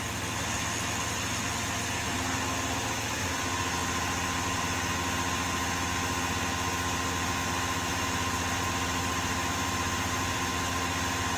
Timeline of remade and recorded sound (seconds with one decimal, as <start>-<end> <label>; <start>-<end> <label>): 0.0-3.8 recorded; 3.8-4.6 remade; 4.6-7.9 recorded; 7.9-10.5 remade; 10.5-11.4 recorded